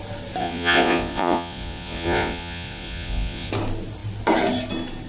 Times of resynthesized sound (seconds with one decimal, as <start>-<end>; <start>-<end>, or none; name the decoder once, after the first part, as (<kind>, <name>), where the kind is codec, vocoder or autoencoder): 0.4-3.5 (vocoder, Vocos)